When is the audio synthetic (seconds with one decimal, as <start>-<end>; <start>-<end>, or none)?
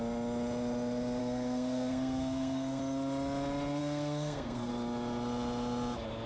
1.2-2.8; 3.8-4.7